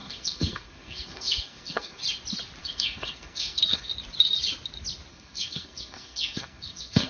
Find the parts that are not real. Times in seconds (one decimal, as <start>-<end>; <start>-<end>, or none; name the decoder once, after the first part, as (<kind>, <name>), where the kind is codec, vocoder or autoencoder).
0.0-2.0 (codec, SNAC); 2.6-3.9; 5.1-7.1